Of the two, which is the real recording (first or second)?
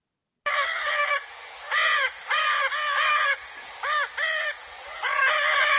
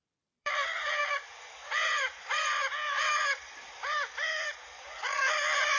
first